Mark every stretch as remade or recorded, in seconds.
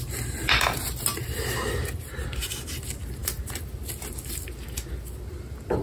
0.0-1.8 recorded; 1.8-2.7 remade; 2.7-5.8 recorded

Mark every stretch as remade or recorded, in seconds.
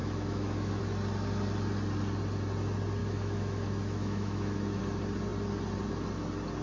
0.0-0.8 remade; 0.8-3.0 recorded; 3.0-4.8 remade; 4.8-6.6 recorded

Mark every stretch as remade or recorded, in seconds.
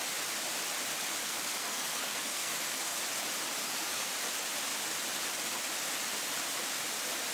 0.0-1.2 recorded; 1.2-3.0 remade; 3.0-3.6 recorded; 3.6-4.1 remade; 4.1-7.3 recorded